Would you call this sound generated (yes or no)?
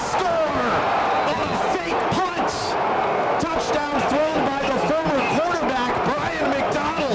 no